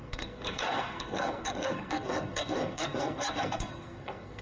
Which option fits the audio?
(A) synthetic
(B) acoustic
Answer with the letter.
A